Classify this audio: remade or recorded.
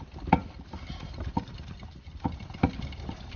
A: remade